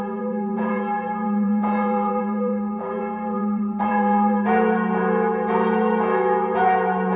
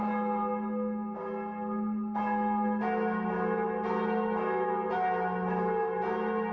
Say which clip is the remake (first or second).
first